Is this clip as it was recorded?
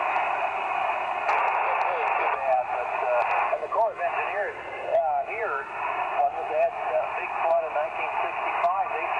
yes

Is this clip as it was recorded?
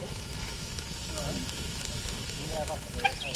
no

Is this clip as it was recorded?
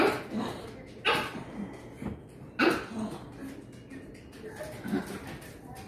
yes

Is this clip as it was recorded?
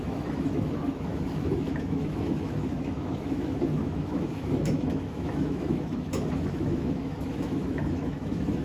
no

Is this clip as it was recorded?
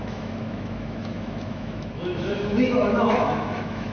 no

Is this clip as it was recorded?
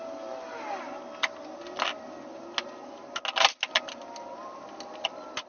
yes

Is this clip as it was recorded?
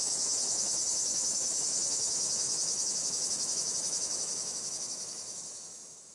no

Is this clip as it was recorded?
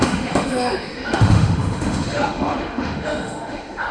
no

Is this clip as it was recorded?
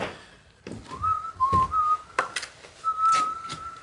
yes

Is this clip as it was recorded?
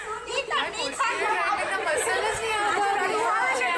yes